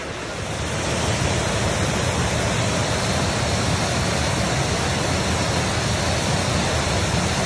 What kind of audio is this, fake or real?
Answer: real